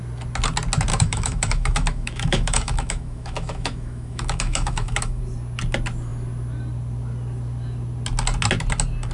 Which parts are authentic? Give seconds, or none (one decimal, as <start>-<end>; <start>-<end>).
0.0-0.9; 5.2-9.1